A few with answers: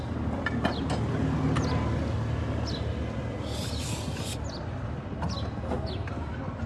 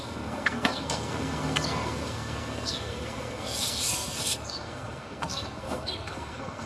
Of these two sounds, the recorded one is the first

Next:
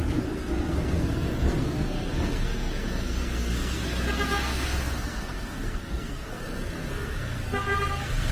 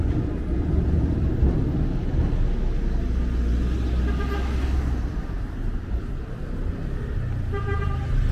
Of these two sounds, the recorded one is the second